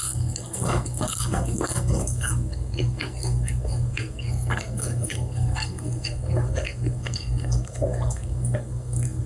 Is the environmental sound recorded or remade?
remade